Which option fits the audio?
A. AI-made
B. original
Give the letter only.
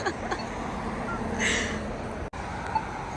B